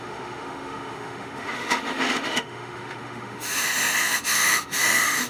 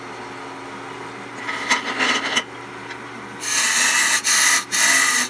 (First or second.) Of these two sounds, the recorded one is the second